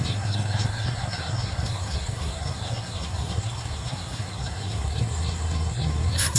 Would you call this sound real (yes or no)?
no